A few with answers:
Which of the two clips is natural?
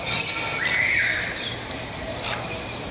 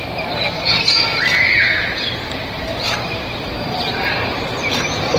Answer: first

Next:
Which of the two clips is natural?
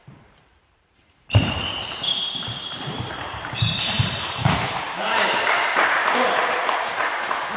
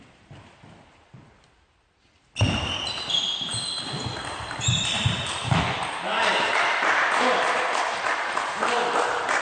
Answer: second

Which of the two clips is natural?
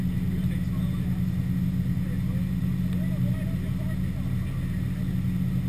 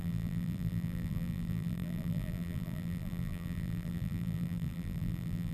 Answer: first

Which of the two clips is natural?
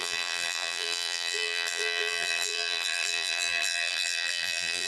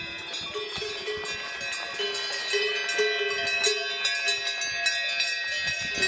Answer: second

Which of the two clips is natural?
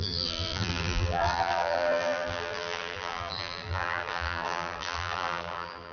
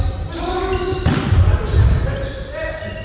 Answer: second